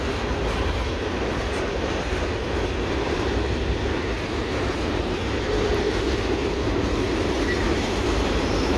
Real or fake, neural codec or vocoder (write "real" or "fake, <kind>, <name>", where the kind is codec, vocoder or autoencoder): fake, vocoder, BigVGAN v2